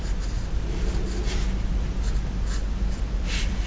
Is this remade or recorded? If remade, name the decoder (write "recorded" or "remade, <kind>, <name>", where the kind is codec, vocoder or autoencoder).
recorded